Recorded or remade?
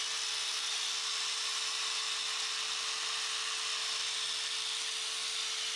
recorded